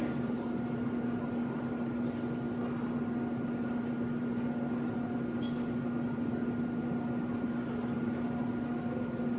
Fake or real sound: real